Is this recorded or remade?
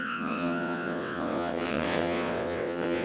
remade